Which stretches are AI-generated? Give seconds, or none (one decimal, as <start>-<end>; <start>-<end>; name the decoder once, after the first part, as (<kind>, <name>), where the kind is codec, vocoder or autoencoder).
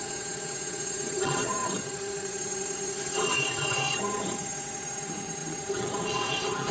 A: 0.0-6.7 (vocoder, WaveNeXt)